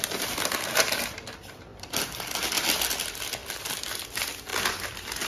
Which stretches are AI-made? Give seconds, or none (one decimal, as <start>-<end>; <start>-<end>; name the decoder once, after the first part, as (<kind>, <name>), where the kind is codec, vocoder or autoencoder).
none